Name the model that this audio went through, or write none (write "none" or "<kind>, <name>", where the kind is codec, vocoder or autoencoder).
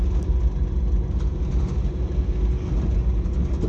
none